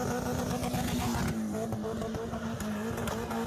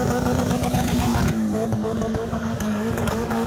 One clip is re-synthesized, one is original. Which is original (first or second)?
first